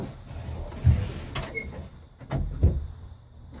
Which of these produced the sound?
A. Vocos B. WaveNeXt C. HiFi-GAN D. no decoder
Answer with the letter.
D